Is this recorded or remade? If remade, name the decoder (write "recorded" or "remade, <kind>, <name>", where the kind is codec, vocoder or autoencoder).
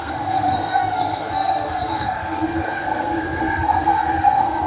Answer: remade, codec, SNAC